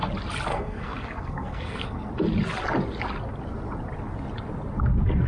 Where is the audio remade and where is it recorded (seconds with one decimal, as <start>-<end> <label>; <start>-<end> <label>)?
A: 0.0-0.5 recorded; 0.5-2.1 remade; 2.1-5.3 recorded